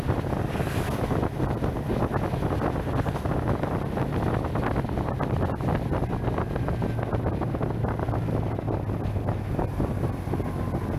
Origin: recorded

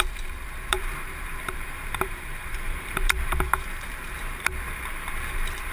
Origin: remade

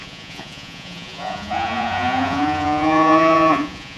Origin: remade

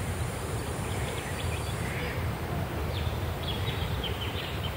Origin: remade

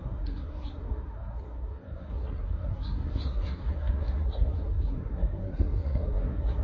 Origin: remade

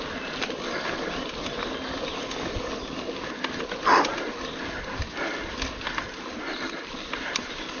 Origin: recorded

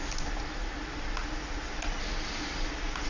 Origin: recorded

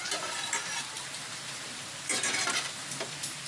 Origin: remade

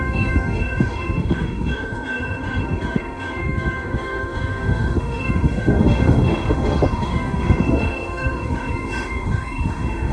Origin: remade